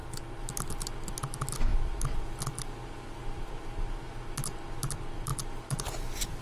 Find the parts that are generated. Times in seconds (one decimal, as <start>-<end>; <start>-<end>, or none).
none